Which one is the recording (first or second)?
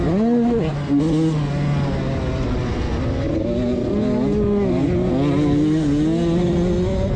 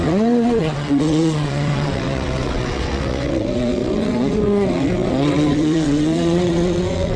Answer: first